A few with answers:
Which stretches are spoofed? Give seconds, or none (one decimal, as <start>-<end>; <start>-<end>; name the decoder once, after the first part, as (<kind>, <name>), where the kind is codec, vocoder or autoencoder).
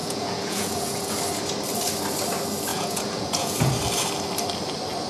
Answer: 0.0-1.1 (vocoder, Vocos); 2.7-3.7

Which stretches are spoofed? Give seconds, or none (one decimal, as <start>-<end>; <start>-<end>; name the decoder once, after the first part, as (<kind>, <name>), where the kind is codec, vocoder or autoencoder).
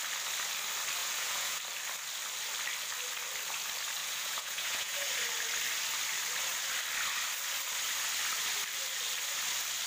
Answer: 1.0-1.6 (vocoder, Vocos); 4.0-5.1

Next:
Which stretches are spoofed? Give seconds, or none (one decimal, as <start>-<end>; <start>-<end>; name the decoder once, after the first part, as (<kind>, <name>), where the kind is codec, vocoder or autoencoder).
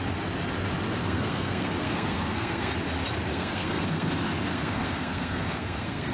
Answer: 1.0-2.7 (codec, SNAC); 3.3-4.1; 4.5-6.1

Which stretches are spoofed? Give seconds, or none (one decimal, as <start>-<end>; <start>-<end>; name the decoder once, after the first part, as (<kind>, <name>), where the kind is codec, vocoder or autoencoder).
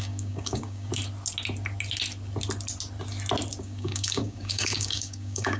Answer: 0.0-0.9 (codec, DAC); 3.6-5.6